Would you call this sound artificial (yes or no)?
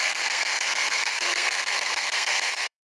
yes